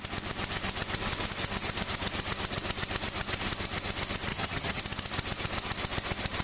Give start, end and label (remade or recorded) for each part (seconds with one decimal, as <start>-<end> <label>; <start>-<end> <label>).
0.0-4.3 recorded; 4.3-4.8 remade; 4.8-6.4 recorded